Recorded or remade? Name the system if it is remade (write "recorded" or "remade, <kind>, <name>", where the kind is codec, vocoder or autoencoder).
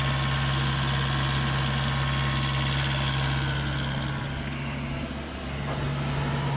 recorded